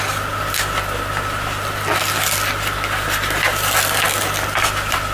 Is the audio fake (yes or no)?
no